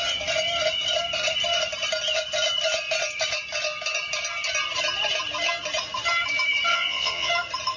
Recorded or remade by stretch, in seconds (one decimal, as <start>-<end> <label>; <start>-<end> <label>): 0.0-6.7 recorded; 6.7-7.3 remade; 7.3-7.8 recorded